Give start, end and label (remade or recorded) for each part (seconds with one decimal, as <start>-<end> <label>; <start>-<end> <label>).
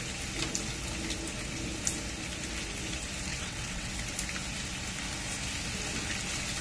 0.0-3.3 recorded; 3.3-3.9 remade; 3.9-6.6 recorded